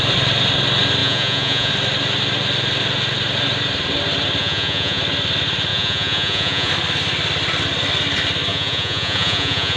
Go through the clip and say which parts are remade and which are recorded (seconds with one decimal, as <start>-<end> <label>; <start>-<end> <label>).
0.0-1.0 recorded; 1.0-1.7 remade; 1.7-4.4 recorded; 4.4-5.0 remade; 5.0-5.7 recorded; 5.7-6.7 remade; 6.7-8.5 recorded; 8.5-9.8 remade